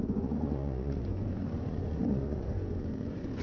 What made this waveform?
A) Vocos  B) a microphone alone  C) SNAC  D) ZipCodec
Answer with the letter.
A